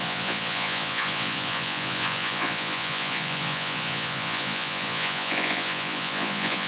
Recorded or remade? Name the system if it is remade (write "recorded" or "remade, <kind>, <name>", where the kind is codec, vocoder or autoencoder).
remade, vocoder, Vocos